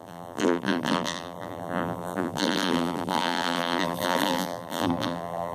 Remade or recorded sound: remade